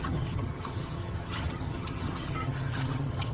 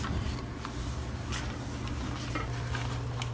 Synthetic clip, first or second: first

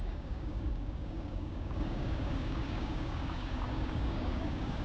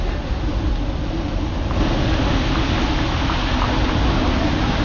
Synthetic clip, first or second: first